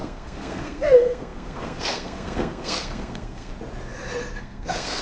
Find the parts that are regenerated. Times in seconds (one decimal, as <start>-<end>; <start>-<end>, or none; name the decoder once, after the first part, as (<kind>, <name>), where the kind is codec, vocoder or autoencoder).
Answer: 0.0-3.5 (codec, SNAC); 4.4-5.0